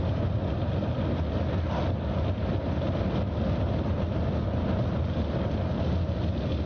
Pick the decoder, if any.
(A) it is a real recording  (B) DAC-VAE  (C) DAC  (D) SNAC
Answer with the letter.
A